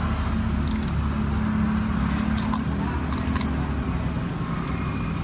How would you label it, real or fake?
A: real